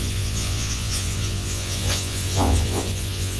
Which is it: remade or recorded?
remade